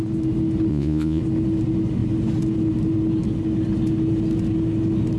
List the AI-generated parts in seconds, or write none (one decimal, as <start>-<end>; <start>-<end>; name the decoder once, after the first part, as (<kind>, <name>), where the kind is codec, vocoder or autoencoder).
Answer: 0.7-1.2 (vocoder, Vocos)